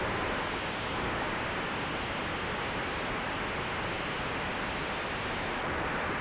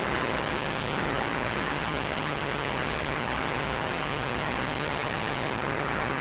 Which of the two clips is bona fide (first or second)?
first